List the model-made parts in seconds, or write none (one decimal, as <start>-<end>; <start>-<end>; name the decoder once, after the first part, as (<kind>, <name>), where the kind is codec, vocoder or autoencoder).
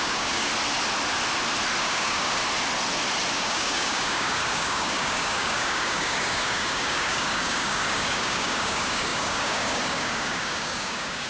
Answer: 0.0-0.5 (codec, DAC); 1.8-2.4; 3.3-11.3